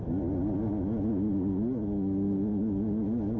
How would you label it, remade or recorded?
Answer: recorded